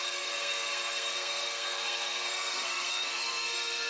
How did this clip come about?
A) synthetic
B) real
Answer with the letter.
A